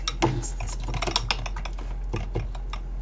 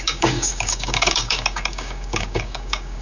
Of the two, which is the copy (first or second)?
second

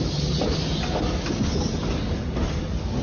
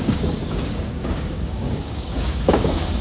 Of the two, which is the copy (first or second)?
second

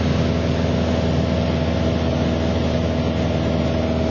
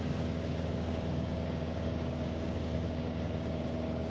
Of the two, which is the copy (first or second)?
second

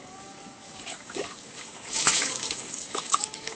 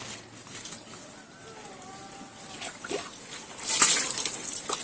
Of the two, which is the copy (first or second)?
first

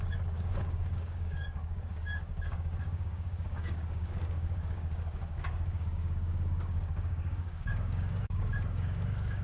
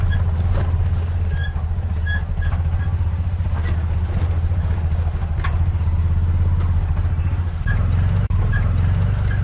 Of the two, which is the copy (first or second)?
first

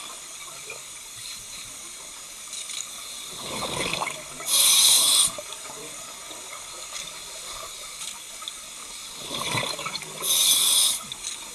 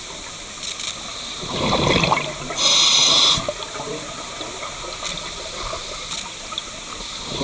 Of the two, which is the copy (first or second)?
first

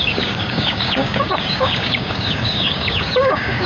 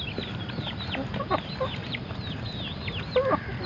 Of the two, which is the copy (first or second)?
first